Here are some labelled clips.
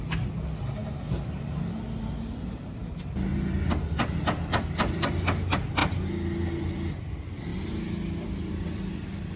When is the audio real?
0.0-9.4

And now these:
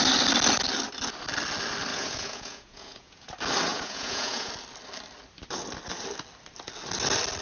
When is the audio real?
0.0-1.9; 3.3-3.7; 4.5-7.4

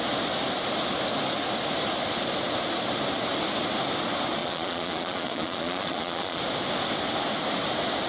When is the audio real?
0.0-4.4; 6.4-8.1

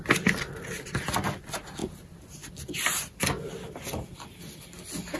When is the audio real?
0.0-1.8; 2.5-5.2